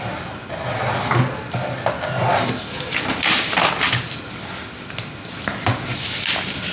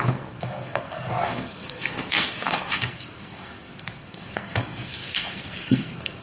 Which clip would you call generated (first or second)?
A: second